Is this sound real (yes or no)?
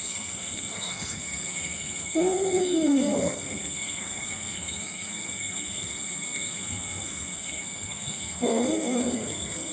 no